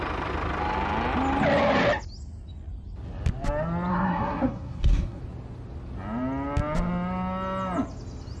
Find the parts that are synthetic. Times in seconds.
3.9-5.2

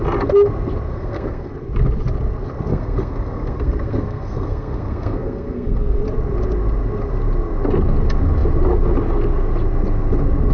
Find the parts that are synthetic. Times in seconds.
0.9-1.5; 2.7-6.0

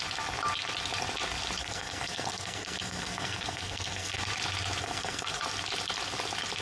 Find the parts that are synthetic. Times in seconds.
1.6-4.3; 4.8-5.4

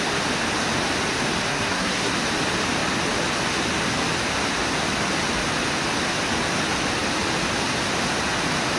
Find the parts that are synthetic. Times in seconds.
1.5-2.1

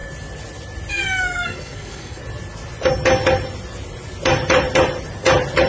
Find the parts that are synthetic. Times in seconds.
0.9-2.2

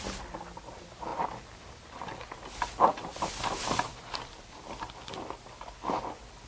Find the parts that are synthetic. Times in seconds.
none

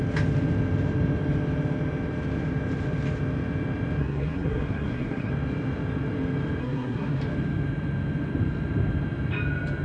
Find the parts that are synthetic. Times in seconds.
4.0-5.3; 6.6-7.2